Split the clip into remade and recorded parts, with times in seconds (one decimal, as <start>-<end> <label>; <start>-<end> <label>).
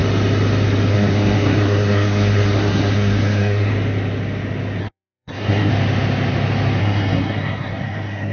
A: 0.0-0.9 recorded; 0.9-3.7 remade; 3.7-4.8 recorded; 4.8-5.7 remade; 5.7-6.8 recorded; 6.8-8.3 remade